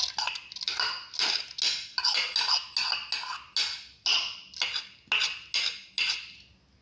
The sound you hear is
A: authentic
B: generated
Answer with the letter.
A